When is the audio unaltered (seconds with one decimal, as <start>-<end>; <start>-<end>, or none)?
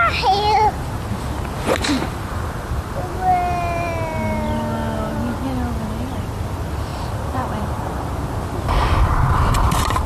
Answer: 0.0-6.9; 7.9-10.1